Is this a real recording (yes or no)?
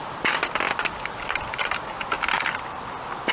yes